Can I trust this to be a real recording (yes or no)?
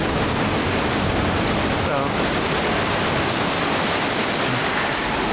yes